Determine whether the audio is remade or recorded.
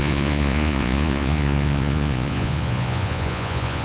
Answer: remade